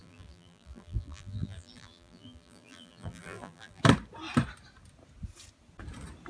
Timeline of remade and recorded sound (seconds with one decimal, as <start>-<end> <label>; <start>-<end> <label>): 0.0-3.8 remade; 3.8-6.3 recorded